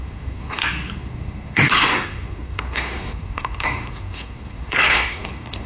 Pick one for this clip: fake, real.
fake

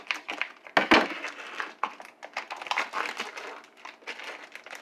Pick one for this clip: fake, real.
real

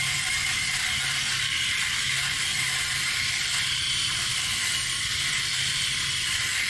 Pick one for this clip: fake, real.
fake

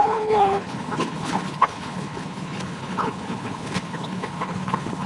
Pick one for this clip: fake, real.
fake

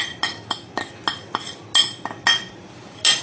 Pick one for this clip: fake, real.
real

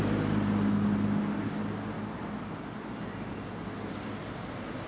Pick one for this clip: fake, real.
real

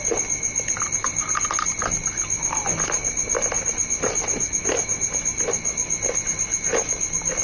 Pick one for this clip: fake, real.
real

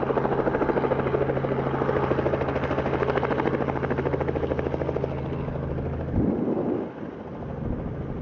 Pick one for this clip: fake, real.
real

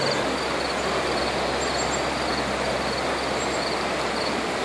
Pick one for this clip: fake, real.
real